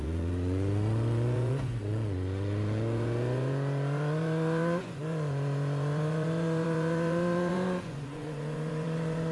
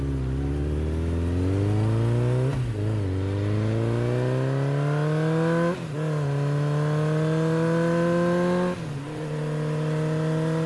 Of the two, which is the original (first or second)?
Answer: second